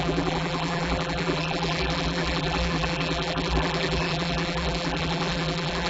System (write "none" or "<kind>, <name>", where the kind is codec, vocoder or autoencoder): vocoder, BigVGAN v2